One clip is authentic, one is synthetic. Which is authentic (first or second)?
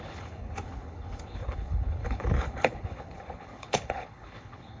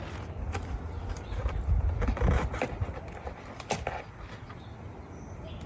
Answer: second